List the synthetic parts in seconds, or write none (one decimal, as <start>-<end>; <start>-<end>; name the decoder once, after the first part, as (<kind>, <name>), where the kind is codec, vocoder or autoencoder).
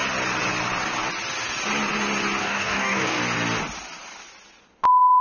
2.4-3.2 (codec, DAC)